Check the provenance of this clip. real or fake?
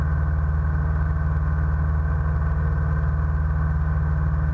real